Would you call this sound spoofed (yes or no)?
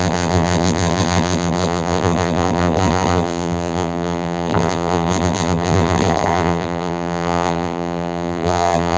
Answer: yes